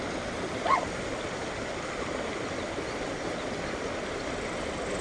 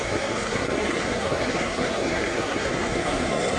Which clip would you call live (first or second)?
first